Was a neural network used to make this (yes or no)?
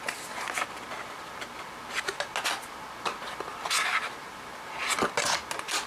no